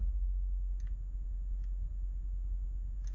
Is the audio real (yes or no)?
yes